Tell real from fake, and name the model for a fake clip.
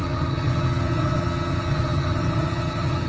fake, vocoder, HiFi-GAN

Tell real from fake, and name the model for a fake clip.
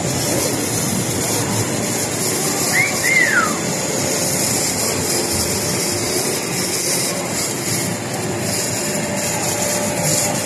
real